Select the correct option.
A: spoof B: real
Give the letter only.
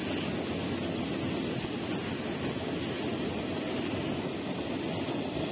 B